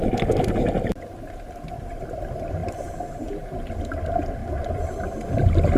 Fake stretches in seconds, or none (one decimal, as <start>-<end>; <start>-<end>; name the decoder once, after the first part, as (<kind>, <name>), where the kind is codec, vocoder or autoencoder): 2.6-3.3 (vocoder, BigVGAN v2); 4.4-5.0